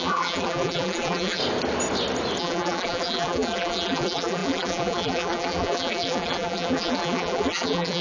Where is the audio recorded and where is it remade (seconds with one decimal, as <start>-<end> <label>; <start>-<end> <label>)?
0.0-1.4 remade; 1.4-2.4 recorded; 2.4-8.0 remade